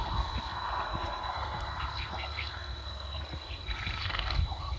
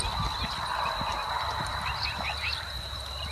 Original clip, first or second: second